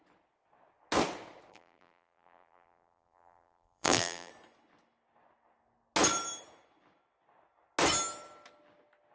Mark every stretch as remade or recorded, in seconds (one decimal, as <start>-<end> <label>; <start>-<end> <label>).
0.0-1.5 recorded; 1.5-4.3 remade; 4.3-9.1 recorded